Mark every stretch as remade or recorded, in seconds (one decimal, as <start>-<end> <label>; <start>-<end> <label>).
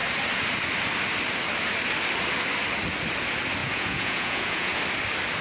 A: 0.0-3.6 recorded; 3.6-4.8 remade; 4.8-5.4 recorded